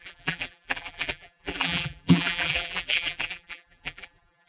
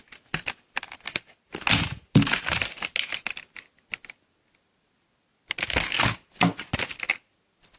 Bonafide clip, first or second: second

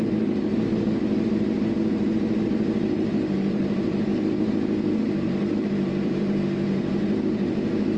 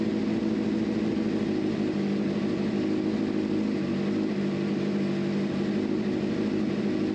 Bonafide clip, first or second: second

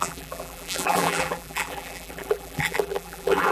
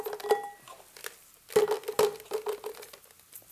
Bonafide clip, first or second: second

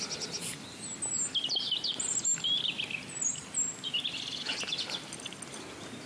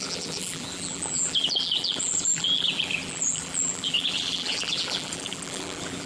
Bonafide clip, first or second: first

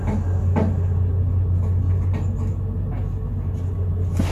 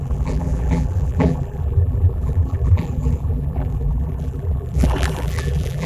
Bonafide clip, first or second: first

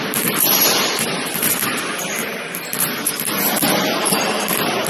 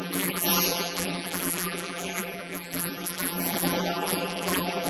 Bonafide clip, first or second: first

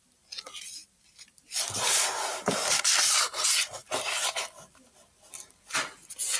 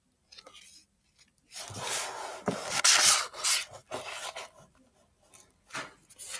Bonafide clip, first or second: second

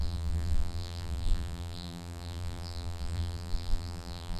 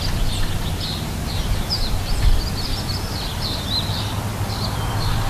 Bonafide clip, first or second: second